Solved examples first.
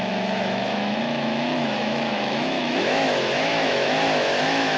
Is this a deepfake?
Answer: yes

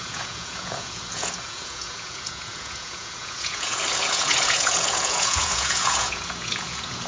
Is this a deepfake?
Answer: yes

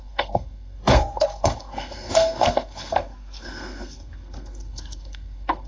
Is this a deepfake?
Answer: yes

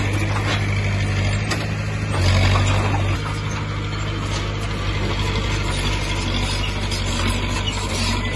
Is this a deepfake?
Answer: no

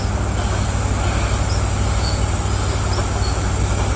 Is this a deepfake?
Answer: no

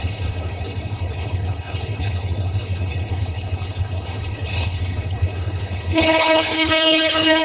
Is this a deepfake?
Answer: yes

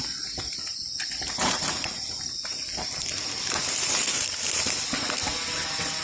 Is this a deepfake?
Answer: no